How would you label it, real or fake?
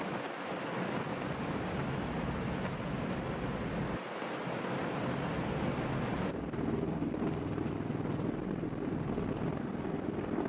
real